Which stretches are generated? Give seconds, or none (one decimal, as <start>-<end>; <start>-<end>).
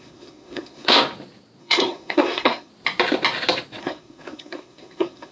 0.0-0.9; 1.6-2.7; 3.8-5.3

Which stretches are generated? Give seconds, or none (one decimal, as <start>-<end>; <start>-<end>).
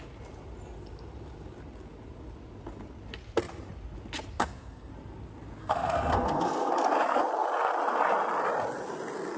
4.4-4.9; 5.6-6.7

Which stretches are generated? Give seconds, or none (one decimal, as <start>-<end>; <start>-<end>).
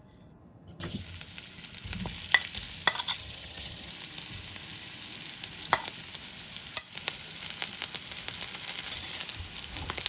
0.4-1.0; 3.2-3.9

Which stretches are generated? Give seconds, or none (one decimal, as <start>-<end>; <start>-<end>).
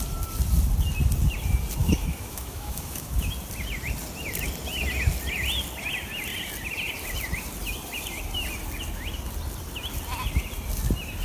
1.8-3.3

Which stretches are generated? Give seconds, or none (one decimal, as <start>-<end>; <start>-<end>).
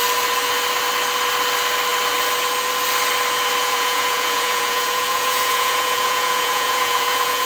3.6-7.5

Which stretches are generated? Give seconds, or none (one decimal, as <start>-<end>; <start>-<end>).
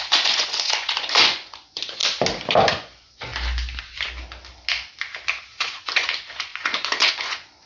0.0-2.0; 2.7-3.3; 5.6-7.7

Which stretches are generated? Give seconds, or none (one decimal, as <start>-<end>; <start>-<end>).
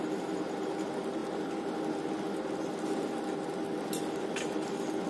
none